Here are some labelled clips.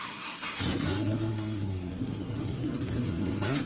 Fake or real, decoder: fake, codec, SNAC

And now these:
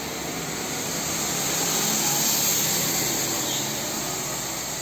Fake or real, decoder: real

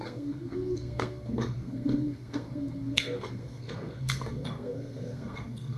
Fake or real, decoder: fake, codec, SNAC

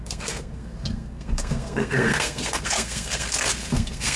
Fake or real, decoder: fake, codec, SNAC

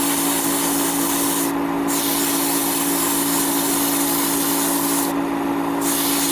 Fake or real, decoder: real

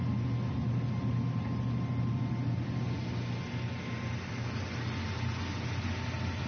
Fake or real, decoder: real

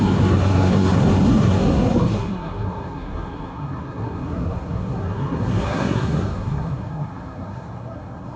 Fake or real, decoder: fake, codec, SNAC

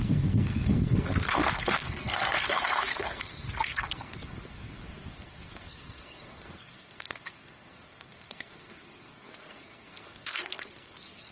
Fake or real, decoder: fake, codec, SNAC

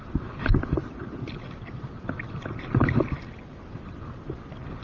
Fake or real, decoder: real